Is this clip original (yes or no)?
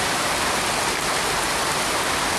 yes